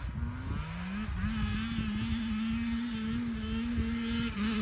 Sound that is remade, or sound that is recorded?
recorded